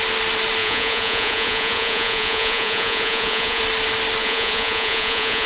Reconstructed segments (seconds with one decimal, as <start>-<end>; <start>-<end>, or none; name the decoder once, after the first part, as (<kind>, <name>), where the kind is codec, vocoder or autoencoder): 0.6-3.6 (vocoder, Vocos); 4.2-5.5